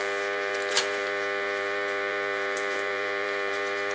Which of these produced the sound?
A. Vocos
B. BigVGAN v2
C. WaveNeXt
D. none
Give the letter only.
B